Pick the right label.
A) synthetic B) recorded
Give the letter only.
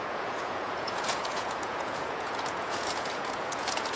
A